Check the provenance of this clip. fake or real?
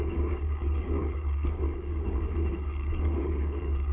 fake